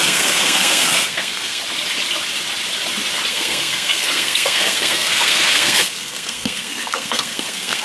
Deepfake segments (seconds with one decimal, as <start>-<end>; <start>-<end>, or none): 0.0-1.6; 3.3-7.8